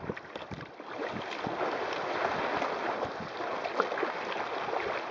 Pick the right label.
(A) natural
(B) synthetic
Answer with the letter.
A